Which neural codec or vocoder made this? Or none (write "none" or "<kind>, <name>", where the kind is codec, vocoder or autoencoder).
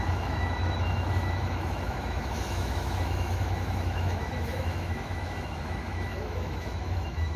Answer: autoencoder, DAC-VAE